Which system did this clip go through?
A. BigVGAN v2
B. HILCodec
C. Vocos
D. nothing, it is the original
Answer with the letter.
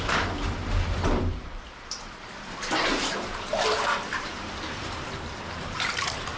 A